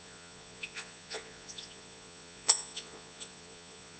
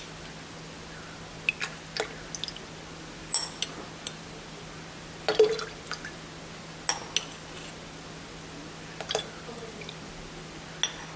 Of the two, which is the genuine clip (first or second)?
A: second